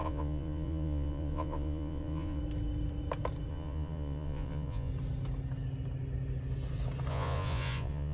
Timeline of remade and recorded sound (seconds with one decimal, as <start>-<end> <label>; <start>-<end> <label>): 0.0-2.4 remade; 2.4-3.5 recorded; 3.5-4.9 remade; 4.9-7.1 recorded; 7.1-8.1 remade